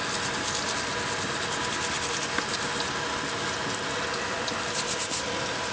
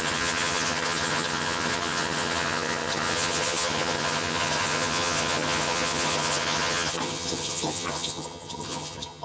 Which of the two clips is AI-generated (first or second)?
second